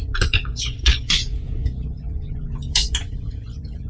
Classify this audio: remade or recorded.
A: remade